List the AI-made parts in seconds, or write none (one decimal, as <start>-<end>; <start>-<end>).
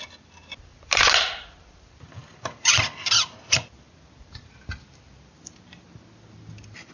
none